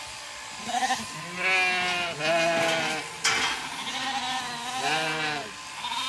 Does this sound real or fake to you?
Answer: real